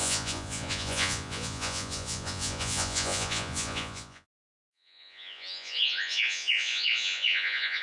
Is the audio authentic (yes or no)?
no